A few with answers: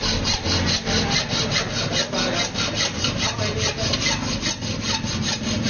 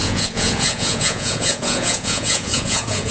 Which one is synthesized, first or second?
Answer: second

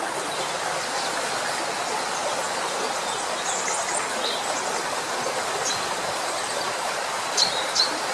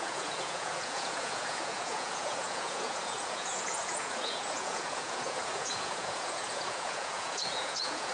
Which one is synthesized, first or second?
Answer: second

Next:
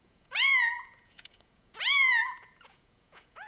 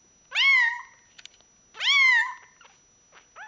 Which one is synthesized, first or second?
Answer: first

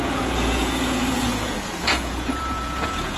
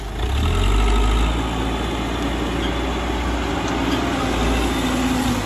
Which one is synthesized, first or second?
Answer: first